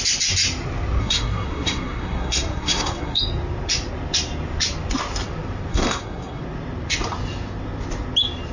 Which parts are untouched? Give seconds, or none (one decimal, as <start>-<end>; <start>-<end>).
0.0-1.0; 3.2-5.7; 6.4-8.5